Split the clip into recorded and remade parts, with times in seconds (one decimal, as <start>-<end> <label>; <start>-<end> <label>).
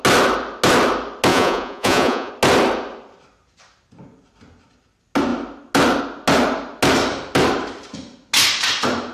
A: 0.0-1.3 recorded; 1.3-2.3 remade; 2.3-9.1 recorded